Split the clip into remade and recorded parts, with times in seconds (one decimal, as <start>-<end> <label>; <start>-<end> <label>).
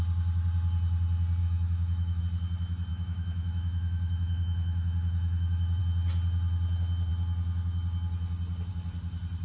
0.0-1.4 recorded; 1.4-2.2 remade; 2.2-2.9 recorded; 2.9-5.8 remade; 5.8-9.4 recorded